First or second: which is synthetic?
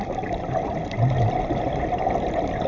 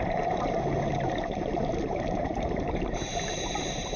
second